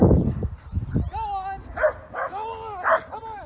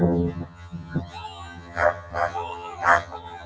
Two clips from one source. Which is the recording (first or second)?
first